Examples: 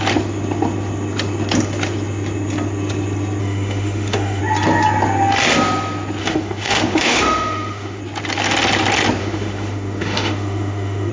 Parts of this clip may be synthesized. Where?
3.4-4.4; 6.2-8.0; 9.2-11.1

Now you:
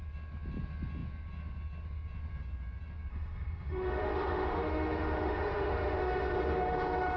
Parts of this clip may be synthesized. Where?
3.1-7.2